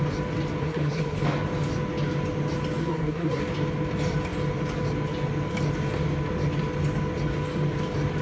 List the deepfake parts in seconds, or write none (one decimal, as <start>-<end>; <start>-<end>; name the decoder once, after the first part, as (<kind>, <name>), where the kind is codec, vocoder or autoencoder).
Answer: 0.6-1.2 (codec, SNAC); 2.8-3.4